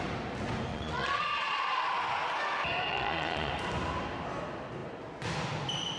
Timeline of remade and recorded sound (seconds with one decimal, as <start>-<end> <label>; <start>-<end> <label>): 0.0-0.7 recorded; 0.7-1.8 remade; 1.8-2.9 recorded; 2.9-3.5 remade; 3.5-6.0 recorded